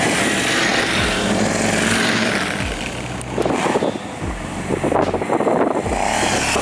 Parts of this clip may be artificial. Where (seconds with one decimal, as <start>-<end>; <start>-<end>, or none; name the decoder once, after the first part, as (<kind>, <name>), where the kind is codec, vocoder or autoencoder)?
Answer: none

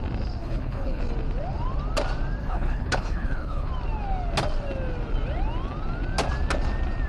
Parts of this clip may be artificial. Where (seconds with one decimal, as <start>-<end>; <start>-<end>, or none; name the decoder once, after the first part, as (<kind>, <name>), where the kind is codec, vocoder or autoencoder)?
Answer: 0.4-1.0 (codec, HILCodec); 2.4-3.7

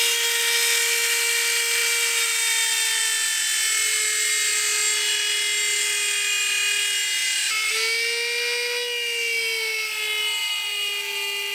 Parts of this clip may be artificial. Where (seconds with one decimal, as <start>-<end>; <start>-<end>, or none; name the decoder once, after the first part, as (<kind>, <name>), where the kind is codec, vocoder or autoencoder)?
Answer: 1.8-3.0 (vocoder, BigVGAN v2); 10.4-10.9